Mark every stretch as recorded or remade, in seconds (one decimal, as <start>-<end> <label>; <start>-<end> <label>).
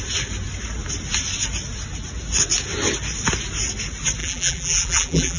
0.0-4.2 recorded; 4.2-5.4 remade